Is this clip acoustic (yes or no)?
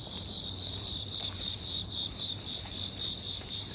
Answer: no